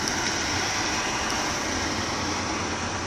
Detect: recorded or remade recorded